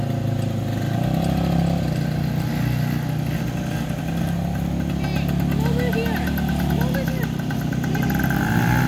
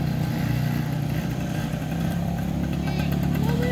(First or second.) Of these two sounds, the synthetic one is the second